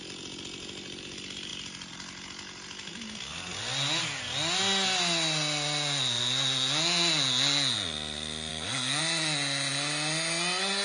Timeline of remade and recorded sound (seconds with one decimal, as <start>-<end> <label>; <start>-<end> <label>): 0.0-8.5 recorded; 8.5-9.0 remade; 9.0-10.8 recorded